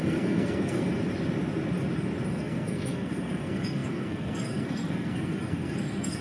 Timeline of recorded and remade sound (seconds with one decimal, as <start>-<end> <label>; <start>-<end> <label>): 0.0-0.9 remade; 0.9-2.3 recorded; 2.3-6.2 remade